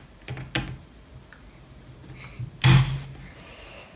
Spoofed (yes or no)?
no